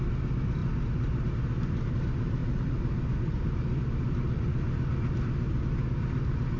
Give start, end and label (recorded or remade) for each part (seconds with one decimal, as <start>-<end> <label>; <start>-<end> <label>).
0.0-6.6 recorded